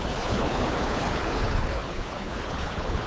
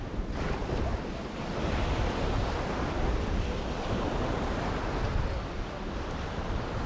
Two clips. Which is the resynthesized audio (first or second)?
first